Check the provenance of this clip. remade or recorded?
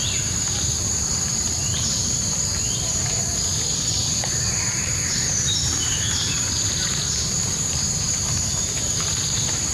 remade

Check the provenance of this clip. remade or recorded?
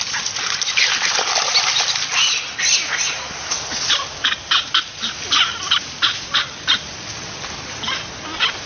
recorded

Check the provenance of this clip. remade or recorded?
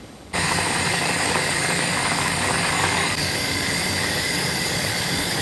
remade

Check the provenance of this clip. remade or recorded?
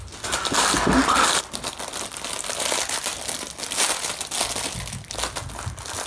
recorded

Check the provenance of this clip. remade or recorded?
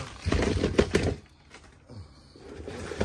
recorded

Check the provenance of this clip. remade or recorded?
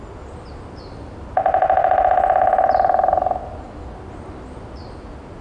recorded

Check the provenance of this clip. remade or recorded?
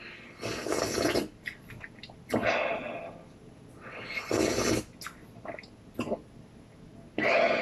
recorded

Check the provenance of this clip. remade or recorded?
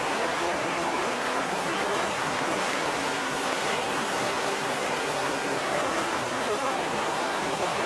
remade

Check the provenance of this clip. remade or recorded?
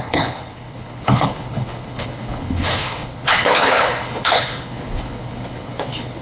remade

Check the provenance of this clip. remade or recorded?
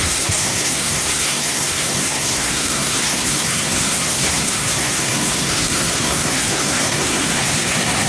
remade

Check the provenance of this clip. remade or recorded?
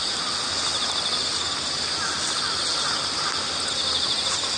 recorded